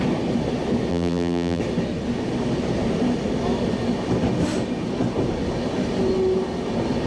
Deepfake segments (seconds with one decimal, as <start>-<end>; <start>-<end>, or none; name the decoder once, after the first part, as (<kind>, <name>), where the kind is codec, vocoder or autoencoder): 0.9-1.6 (vocoder, BigVGAN v2)